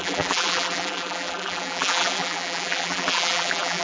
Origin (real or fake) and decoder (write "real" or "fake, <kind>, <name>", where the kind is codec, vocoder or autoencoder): fake, vocoder, BigVGAN v2